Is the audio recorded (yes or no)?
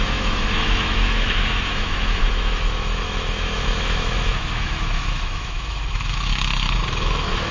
no